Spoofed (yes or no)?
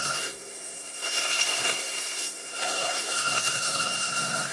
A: yes